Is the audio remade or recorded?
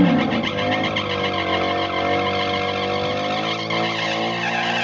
recorded